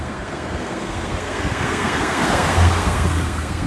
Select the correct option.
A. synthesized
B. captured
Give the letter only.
A